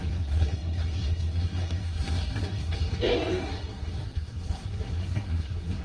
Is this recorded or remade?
remade